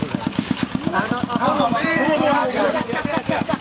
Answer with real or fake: fake